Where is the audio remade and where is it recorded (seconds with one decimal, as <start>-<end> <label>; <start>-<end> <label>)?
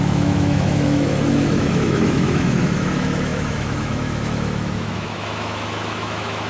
0.0-6.5 remade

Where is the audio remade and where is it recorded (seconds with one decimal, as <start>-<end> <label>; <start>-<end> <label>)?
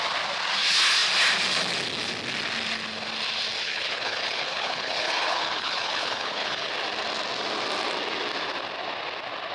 0.0-3.6 recorded; 3.6-6.7 remade; 6.7-9.5 recorded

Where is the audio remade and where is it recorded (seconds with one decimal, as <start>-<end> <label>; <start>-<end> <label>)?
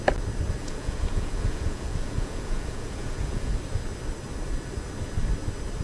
0.0-0.6 recorded; 0.6-3.6 remade; 3.6-5.8 recorded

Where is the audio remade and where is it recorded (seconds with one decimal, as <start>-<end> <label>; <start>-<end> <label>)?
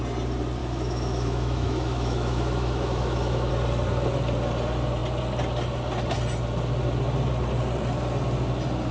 0.0-0.6 recorded; 0.6-3.5 remade; 3.5-8.9 recorded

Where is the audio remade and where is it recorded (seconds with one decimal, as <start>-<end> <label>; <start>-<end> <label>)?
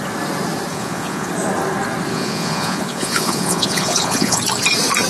0.0-0.7 recorded; 0.7-1.3 remade; 1.3-2.1 recorded; 2.1-4.4 remade; 4.4-5.1 recorded